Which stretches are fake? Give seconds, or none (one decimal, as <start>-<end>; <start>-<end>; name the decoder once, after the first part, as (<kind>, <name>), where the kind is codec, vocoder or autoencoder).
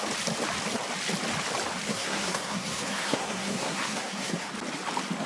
1.9-4.5 (codec, SNAC)